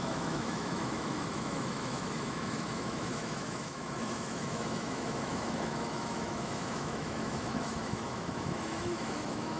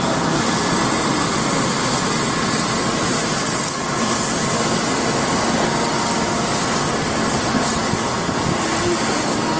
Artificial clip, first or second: first